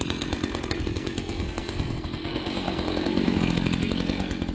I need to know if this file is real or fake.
fake